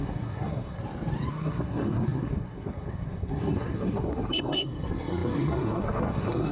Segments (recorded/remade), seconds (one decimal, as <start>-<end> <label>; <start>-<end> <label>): 0.0-0.8 remade; 0.8-1.3 recorded; 1.3-6.5 remade